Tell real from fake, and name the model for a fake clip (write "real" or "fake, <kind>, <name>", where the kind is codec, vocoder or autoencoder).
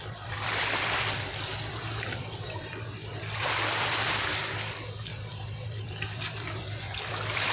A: fake, vocoder, BigVGAN v2